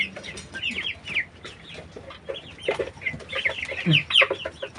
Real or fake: real